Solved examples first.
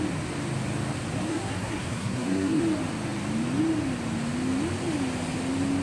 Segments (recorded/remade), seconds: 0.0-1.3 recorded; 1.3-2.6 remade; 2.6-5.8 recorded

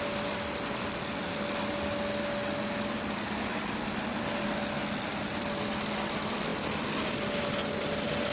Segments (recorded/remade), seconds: 0.0-8.3 recorded

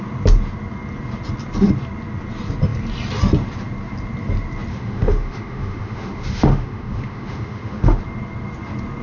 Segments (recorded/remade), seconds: 0.0-4.7 recorded; 4.7-8.0 remade; 8.0-9.0 recorded

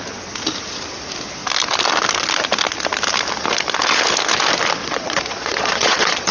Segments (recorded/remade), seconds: 0.0-4.8 recorded; 4.8-6.3 remade

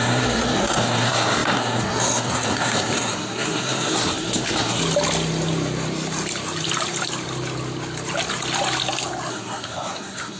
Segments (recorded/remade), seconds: 0.0-4.8 remade; 4.8-9.3 recorded; 9.3-10.4 remade

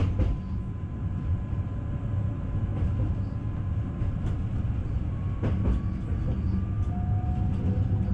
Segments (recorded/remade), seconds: 0.0-8.1 recorded

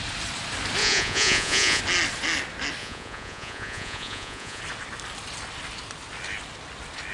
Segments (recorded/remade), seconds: 0.0-0.8 recorded; 0.8-1.8 remade; 1.8-2.8 recorded; 2.8-4.6 remade; 4.6-7.1 recorded